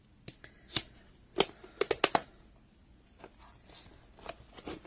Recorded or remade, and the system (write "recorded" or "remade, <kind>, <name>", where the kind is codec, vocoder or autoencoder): recorded